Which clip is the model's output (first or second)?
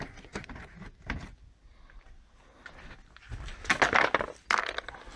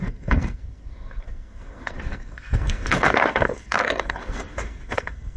second